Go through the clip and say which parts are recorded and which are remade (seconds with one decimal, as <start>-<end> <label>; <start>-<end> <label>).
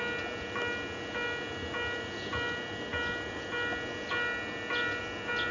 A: 0.0-5.5 recorded